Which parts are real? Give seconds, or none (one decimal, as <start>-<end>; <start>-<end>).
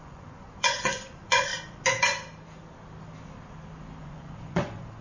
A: 1.5-4.0